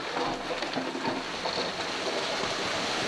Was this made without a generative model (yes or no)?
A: yes